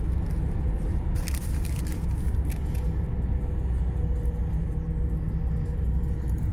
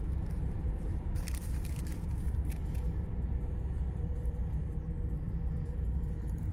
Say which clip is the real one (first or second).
first